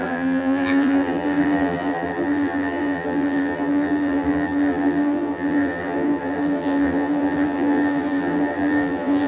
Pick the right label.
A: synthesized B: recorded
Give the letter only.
A